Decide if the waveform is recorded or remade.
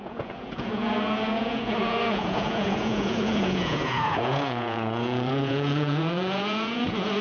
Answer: remade